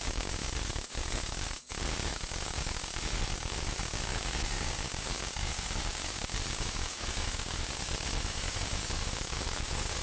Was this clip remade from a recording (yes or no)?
yes